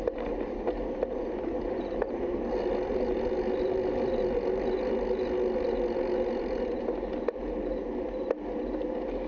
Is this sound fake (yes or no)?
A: no